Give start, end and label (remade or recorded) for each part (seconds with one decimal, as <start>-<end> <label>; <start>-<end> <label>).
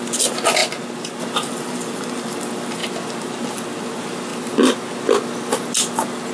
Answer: 0.0-0.6 remade; 0.6-1.2 recorded; 1.2-2.8 remade; 2.8-3.8 recorded; 3.8-4.3 remade; 4.3-6.3 recorded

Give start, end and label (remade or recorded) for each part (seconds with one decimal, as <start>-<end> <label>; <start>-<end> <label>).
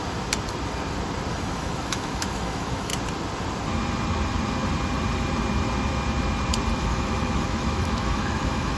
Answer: 0.0-1.3 recorded; 1.3-2.9 remade; 2.9-6.7 recorded; 6.7-8.8 remade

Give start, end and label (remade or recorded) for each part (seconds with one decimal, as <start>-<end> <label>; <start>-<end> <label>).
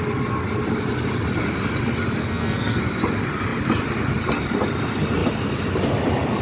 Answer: 0.0-2.2 recorded; 2.2-2.8 remade; 2.8-6.4 recorded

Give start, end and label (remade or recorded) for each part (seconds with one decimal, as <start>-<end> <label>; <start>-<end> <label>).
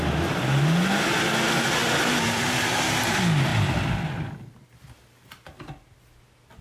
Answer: 0.0-1.8 recorded; 1.8-2.6 remade; 2.6-3.5 recorded; 3.5-4.3 remade; 4.3-6.6 recorded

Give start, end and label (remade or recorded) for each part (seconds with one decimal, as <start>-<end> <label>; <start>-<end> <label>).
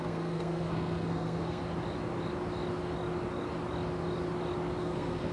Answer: 0.0-1.6 remade; 1.6-4.8 recorded; 4.8-5.3 remade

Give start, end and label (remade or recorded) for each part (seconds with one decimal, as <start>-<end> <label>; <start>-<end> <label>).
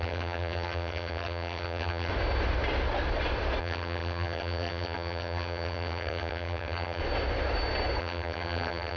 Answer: 0.0-2.1 remade; 2.1-3.6 recorded; 3.6-7.0 remade; 7.0-8.0 recorded; 8.0-9.0 remade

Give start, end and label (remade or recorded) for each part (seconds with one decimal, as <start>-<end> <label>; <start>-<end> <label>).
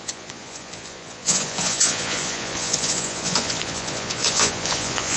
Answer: 0.0-5.2 remade